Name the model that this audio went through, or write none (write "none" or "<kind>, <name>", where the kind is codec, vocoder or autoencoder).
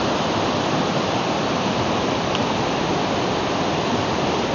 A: vocoder, BigVGAN v2